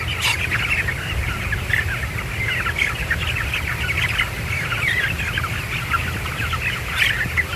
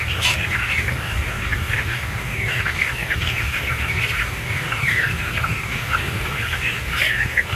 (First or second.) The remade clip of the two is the second